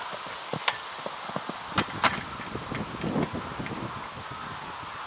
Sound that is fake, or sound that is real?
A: real